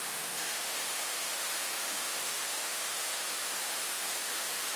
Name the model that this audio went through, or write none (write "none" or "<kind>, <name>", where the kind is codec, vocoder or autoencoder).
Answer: autoencoder, DAC-VAE